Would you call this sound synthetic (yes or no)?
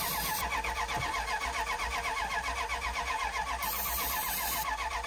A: no